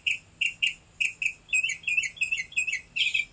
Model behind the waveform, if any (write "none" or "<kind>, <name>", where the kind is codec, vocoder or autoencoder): none